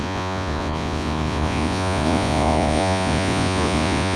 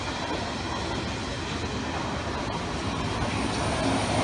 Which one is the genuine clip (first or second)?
second